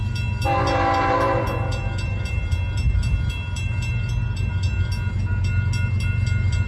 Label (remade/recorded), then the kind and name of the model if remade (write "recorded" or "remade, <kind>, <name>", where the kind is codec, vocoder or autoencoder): recorded